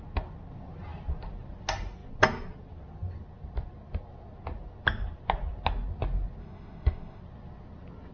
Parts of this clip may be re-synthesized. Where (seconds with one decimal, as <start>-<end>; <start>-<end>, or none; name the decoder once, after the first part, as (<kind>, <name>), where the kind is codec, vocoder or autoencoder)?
6.4-7.2 (autoencoder, DAC-VAE)